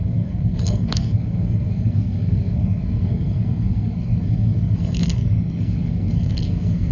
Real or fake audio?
fake